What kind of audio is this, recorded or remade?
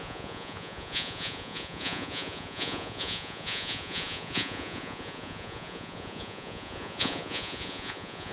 remade